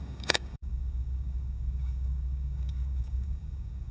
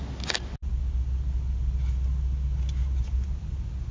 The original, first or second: second